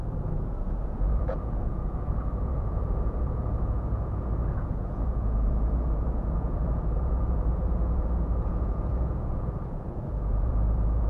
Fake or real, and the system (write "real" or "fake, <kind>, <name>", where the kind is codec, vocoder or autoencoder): fake, vocoder, Vocos